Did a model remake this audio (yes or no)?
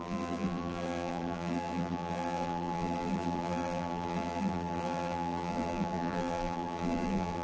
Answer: yes